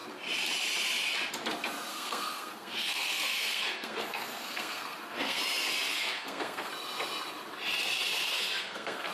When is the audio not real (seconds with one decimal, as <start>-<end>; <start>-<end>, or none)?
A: 1.9-5.4; 5.9-6.7; 8.2-9.1